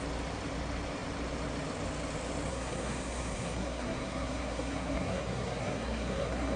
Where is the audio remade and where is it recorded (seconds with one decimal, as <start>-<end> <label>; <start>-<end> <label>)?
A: 0.0-2.5 recorded; 2.5-6.6 remade